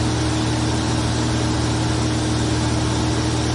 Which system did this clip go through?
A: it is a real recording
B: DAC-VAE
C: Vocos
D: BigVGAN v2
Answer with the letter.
A